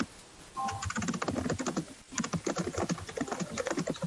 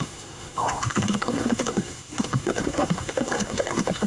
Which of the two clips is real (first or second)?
first